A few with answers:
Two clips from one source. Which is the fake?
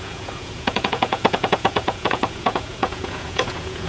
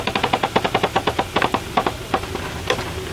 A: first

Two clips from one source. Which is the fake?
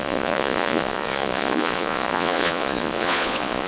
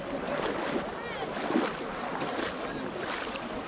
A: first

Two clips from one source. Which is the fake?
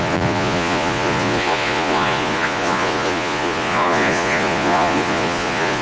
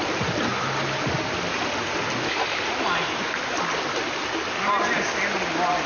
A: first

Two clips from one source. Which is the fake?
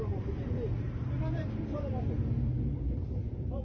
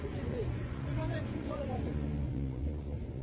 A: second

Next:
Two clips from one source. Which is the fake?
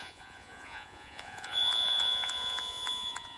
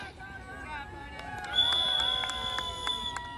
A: first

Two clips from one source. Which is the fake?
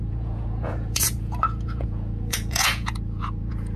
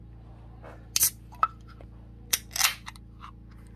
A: first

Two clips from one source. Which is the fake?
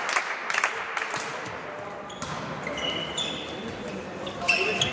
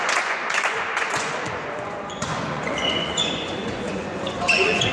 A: second